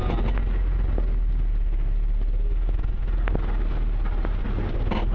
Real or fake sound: real